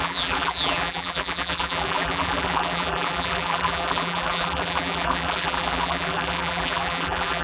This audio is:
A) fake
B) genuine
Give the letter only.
A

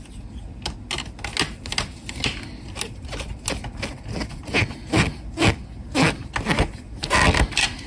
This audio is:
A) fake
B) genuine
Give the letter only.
B